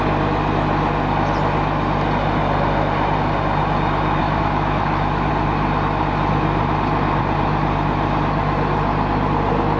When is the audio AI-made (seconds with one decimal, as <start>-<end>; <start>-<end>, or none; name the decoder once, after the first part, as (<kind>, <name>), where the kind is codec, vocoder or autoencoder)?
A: 4.2-5.3 (autoencoder, DAC-VAE)